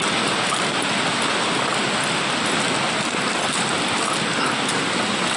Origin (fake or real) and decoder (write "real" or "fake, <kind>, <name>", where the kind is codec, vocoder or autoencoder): real